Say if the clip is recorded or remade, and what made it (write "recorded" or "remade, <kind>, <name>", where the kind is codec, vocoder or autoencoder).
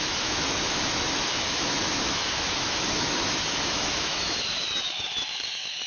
remade, autoencoder, DAC-VAE